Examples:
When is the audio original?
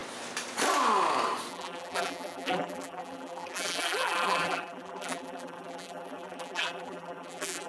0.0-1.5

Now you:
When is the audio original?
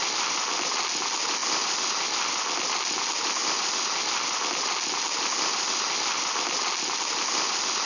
0.0-7.9